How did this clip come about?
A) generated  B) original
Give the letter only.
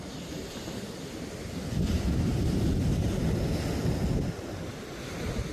B